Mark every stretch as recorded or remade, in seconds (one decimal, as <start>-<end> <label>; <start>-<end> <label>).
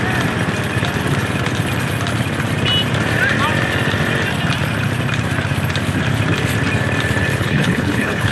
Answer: 0.0-7.4 recorded; 7.4-8.3 remade